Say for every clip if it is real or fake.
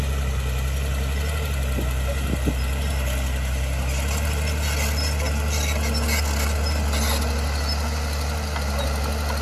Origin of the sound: real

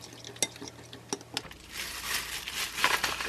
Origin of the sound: real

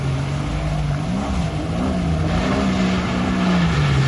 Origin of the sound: real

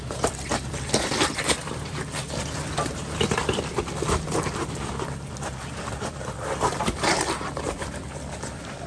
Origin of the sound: fake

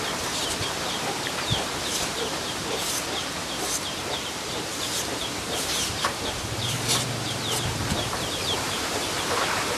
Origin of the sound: fake